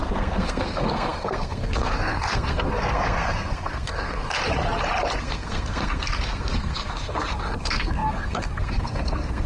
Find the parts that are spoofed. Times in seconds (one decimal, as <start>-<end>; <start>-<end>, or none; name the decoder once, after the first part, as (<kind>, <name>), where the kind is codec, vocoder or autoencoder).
0.0-4.4 (codec, SNAC); 5.2-9.5